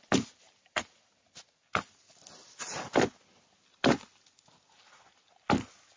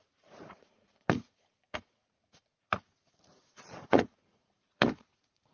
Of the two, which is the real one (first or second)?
first